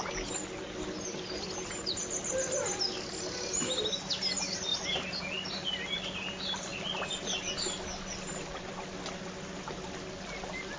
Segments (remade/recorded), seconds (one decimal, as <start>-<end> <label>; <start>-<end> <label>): 0.0-10.8 recorded